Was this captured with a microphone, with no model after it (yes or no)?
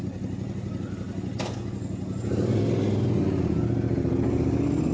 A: yes